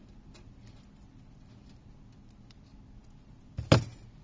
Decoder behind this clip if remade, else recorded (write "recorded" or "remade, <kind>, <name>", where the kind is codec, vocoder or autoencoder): recorded